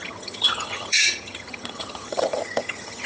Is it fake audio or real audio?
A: fake